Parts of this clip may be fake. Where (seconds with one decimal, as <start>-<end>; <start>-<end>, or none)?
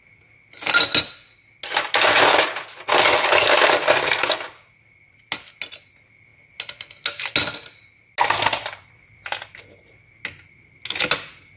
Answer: none